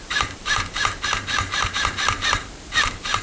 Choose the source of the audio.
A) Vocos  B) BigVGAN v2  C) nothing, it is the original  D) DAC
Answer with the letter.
B